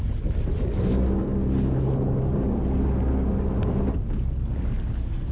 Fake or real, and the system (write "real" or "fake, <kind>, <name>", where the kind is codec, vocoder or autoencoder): real